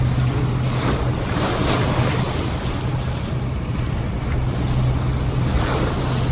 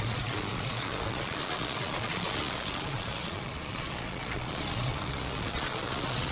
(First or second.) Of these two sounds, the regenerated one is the second